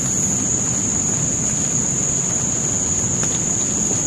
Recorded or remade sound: recorded